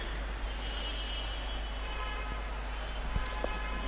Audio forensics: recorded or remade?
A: recorded